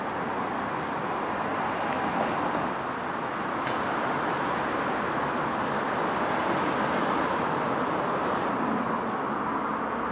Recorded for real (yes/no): yes